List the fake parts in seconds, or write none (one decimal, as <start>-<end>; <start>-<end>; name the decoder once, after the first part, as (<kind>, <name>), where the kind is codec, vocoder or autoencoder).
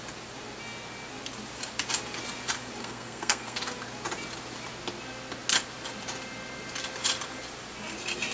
2.8-3.6 (codec, SNAC)